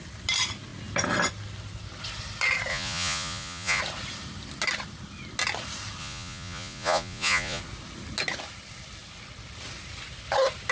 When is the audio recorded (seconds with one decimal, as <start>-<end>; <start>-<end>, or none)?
0.0-2.7; 3.8-6.0; 7.6-10.7